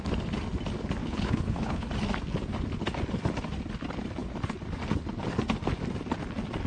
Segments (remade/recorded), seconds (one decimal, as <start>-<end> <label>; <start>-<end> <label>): 0.0-1.0 recorded; 1.0-1.9 remade; 1.9-6.7 recorded